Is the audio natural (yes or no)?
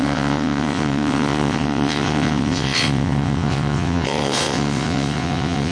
no